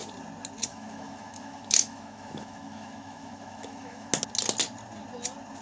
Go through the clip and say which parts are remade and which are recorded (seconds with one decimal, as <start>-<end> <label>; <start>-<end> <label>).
0.0-0.7 recorded; 0.7-4.1 remade; 4.1-5.6 recorded